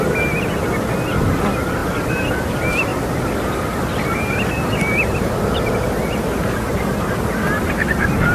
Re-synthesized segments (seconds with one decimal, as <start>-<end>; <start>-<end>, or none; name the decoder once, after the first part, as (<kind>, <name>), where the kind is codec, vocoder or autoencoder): none